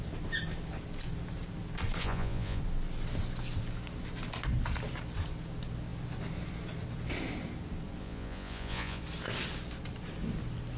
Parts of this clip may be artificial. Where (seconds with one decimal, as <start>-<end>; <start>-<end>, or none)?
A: 2.0-2.6; 8.0-9.0

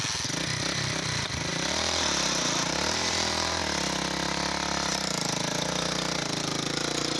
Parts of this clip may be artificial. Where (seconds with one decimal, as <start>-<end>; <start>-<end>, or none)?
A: 1.5-3.6; 4.9-6.4

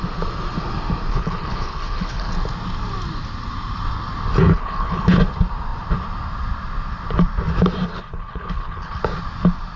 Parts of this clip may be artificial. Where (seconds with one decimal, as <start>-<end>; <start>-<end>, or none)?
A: 1.1-2.3; 4.5-5.2; 7.9-9.0

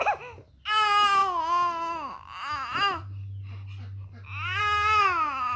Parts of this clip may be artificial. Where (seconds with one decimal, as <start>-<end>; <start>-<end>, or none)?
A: none

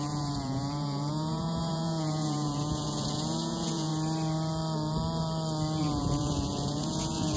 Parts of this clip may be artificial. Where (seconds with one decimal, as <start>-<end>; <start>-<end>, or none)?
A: 0.0-3.9; 5.8-7.4

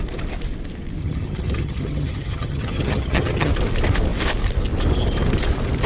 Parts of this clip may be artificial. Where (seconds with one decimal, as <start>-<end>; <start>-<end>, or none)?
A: 1.0-3.5

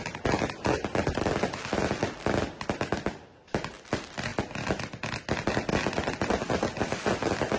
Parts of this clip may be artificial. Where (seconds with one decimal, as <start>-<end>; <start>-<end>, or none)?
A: none

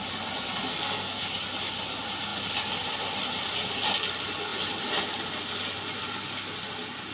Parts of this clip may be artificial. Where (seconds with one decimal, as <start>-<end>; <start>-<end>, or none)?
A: 0.7-1.2